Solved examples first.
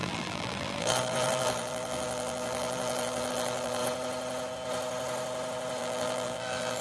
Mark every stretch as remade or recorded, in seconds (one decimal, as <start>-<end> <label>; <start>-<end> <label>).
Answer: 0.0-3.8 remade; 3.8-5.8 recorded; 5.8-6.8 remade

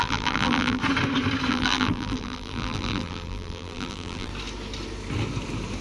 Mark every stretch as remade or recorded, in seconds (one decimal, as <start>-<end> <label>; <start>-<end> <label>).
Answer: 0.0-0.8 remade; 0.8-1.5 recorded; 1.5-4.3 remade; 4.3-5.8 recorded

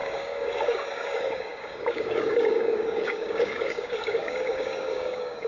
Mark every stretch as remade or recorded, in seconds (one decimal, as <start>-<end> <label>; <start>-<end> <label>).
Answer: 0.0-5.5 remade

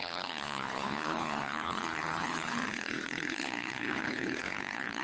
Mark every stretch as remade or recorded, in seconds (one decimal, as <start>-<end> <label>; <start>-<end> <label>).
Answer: 0.0-5.0 remade

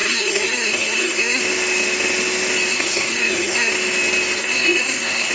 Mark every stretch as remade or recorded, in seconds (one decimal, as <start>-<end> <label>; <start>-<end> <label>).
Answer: 0.0-1.4 remade; 1.4-2.7 recorded; 2.7-3.7 remade; 3.7-4.4 recorded; 4.4-5.3 remade